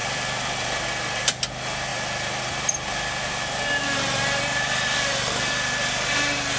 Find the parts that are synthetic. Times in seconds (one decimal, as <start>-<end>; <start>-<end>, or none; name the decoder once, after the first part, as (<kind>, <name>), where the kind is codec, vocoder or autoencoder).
0.0-1.5 (vocoder, BigVGAN v2); 1.9-5.5